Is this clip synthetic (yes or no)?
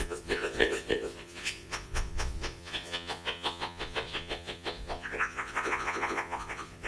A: yes